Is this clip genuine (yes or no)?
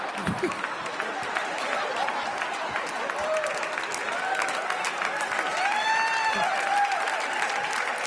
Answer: yes